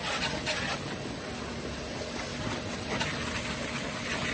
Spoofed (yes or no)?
no